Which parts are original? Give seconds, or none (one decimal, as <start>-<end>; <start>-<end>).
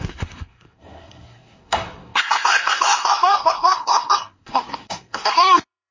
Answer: none